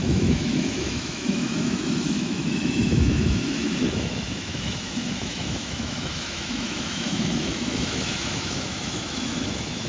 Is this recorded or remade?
remade